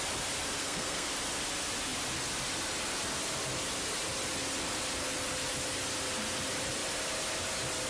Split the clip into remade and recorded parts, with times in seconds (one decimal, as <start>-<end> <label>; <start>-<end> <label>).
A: 0.0-0.6 recorded; 0.6-1.1 remade; 1.1-7.9 recorded

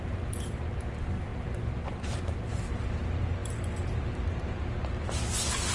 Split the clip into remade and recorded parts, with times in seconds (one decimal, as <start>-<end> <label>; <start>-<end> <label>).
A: 0.0-1.3 recorded; 1.3-2.2 remade; 2.2-5.7 recorded

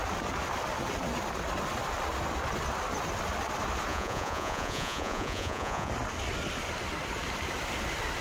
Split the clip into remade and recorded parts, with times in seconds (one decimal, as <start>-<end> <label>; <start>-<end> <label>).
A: 0.0-3.9 recorded; 3.9-5.9 remade; 5.9-8.2 recorded

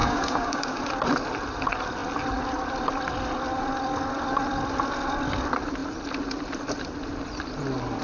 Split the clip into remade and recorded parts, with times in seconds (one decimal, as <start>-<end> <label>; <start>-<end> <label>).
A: 0.0-0.8 remade; 0.8-8.0 recorded

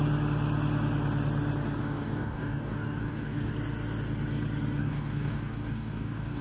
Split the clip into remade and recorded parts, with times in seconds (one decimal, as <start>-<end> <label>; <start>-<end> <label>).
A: 0.0-1.8 recorded; 1.8-3.5 remade; 3.5-4.8 recorded; 4.8-6.4 remade

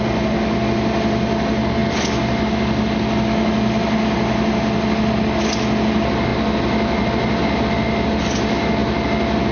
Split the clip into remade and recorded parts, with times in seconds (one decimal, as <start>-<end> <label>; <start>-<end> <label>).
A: 0.0-9.5 recorded

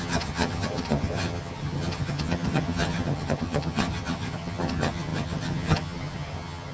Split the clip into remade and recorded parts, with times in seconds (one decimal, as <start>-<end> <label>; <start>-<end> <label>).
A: 0.0-6.7 remade

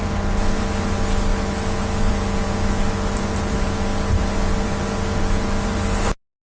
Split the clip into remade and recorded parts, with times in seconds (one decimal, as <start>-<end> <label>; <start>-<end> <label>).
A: 0.0-6.5 recorded